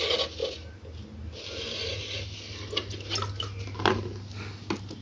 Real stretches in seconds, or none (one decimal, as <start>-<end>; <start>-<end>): 0.0-5.0